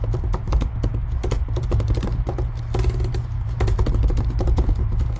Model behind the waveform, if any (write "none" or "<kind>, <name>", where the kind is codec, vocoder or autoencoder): none